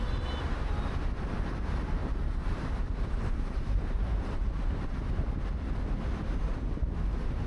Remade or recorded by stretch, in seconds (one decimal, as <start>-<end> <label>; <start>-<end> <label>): 0.0-2.0 recorded; 2.0-5.4 remade; 5.4-7.5 recorded